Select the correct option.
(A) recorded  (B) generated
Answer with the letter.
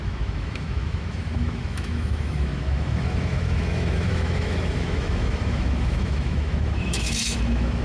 B